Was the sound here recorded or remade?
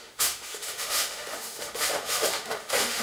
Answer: remade